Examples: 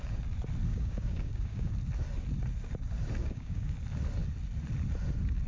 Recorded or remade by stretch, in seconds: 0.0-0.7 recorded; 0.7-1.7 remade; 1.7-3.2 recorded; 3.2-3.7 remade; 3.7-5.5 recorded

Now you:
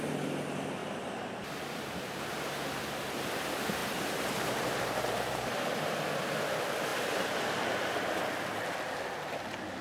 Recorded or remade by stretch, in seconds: 0.0-0.8 recorded; 0.8-2.2 remade; 2.2-3.8 recorded; 3.8-5.9 remade; 5.9-9.8 recorded